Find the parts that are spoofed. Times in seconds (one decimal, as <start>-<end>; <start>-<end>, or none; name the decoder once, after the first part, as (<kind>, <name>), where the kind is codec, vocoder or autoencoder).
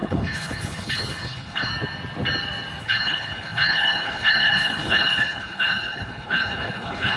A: 0.0-1.7 (codec, HILCodec); 2.8-7.2